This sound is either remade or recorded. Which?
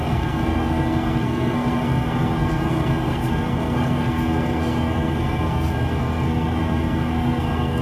remade